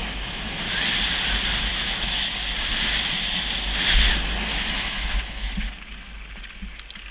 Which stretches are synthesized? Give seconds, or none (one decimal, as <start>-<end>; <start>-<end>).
0.0-0.6; 1.7-2.3; 4.5-5.5